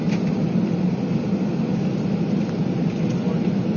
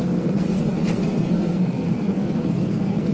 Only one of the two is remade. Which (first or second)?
second